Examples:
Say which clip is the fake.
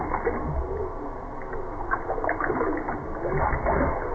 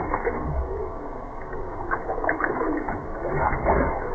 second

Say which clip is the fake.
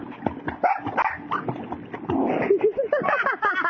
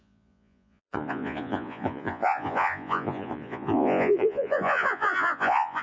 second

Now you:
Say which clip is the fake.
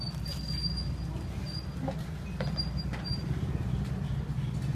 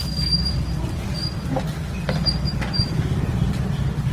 second